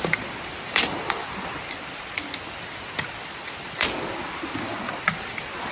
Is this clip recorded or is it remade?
recorded